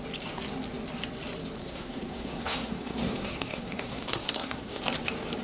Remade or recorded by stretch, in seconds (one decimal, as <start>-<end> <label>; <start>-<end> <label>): 0.0-1.6 recorded; 1.6-4.8 remade; 4.8-5.4 recorded